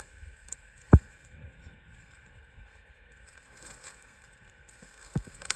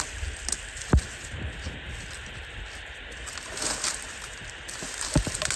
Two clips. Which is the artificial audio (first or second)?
first